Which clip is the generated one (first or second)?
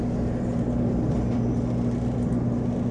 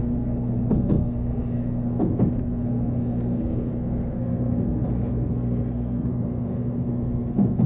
second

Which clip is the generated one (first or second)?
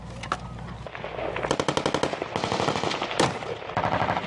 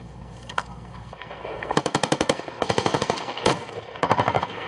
second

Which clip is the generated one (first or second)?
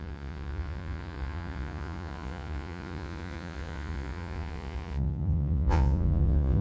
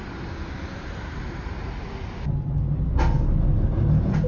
first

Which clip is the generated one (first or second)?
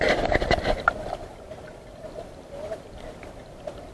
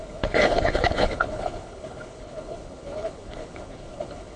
second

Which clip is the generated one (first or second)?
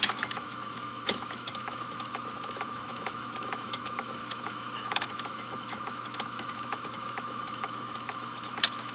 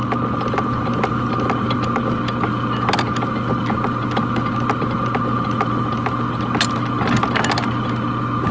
first